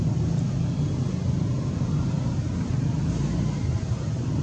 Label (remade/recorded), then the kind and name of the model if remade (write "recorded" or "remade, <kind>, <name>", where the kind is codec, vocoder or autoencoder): recorded